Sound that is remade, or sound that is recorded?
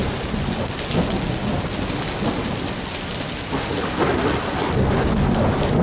recorded